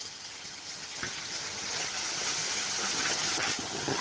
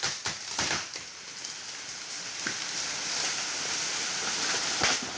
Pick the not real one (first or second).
first